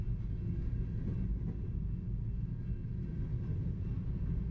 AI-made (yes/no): no